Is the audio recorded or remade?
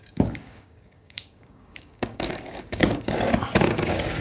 remade